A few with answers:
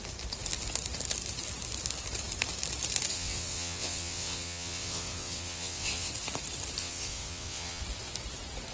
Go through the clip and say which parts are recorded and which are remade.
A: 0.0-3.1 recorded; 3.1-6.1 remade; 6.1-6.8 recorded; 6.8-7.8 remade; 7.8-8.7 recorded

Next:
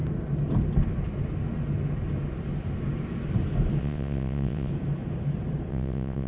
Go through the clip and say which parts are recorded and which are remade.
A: 0.0-3.8 recorded; 3.8-4.7 remade; 4.7-5.7 recorded; 5.7-6.3 remade

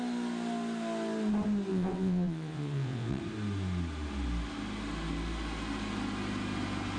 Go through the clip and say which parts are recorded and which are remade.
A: 0.0-1.7 recorded; 1.7-3.2 remade; 3.2-7.0 recorded

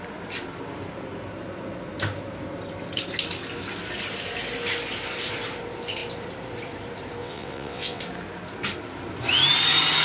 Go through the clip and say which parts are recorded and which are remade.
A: 0.0-7.2 recorded; 7.2-8.0 remade; 8.0-10.0 recorded

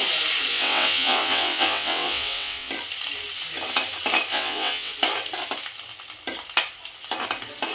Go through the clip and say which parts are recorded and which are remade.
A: 0.0-0.5 recorded; 0.5-2.7 remade; 2.7-4.3 recorded; 4.3-4.9 remade; 4.9-7.7 recorded

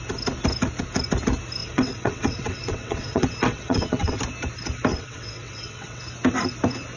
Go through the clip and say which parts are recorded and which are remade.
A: 0.0-1.6 recorded; 1.6-4.2 remade; 4.2-4.9 recorded; 4.9-6.0 remade; 6.0-7.0 recorded

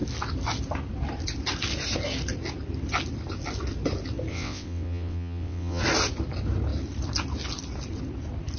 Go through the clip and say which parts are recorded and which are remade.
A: 0.0-4.3 recorded; 4.3-5.8 remade; 5.8-8.6 recorded

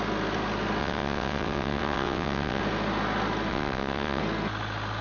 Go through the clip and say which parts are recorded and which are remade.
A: 0.0-0.8 recorded; 0.8-2.6 remade; 2.6-3.5 recorded; 3.5-4.2 remade; 4.2-5.0 recorded